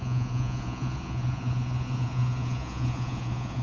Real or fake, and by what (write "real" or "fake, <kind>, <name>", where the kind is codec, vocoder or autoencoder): fake, vocoder, Vocos